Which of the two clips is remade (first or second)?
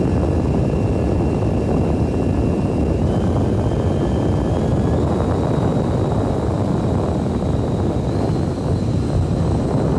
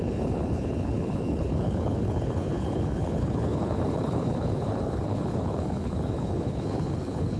second